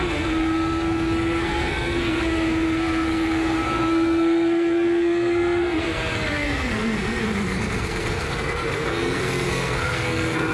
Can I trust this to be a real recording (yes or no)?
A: no